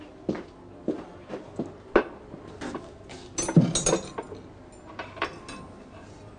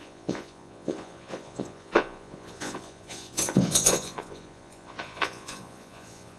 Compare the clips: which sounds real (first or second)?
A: first